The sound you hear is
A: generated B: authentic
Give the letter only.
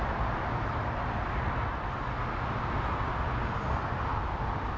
B